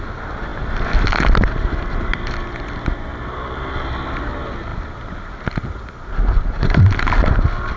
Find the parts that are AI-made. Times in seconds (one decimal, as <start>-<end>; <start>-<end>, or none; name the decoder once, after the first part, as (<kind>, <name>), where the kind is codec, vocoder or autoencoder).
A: none